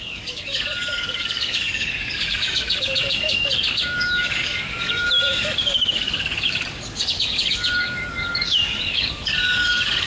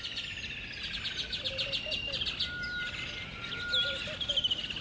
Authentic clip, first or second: second